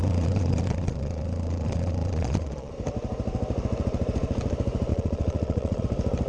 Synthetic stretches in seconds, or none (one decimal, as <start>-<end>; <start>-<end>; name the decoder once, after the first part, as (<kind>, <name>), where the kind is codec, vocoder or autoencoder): 0.0-2.7 (vocoder, Vocos); 4.9-5.8